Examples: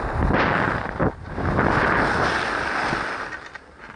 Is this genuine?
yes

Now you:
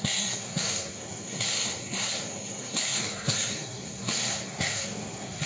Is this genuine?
no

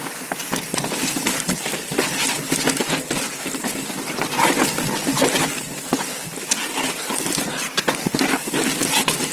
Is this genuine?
yes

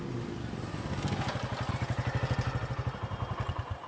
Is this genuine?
yes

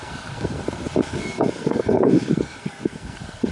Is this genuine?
no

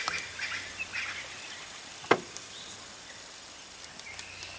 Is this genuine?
yes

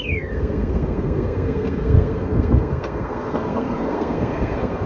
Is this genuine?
no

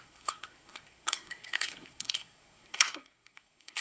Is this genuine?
no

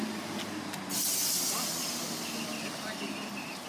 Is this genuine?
yes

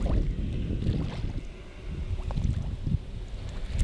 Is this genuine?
yes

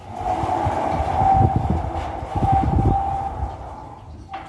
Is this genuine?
yes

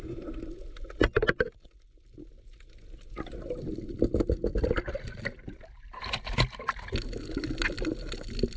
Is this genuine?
yes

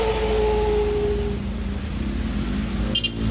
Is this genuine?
yes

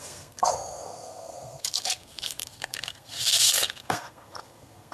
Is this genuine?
no